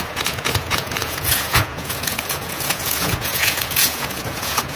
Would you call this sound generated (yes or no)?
yes